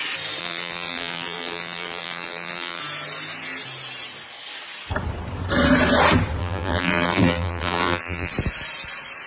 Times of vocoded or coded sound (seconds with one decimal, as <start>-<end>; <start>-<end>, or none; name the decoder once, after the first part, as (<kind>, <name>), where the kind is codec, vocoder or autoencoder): 0.4-2.8 (vocoder, BigVGAN v2); 6.4-8.3